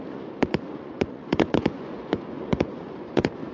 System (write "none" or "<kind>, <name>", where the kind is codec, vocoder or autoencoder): vocoder, Vocos